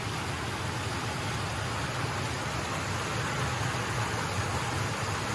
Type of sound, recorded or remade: recorded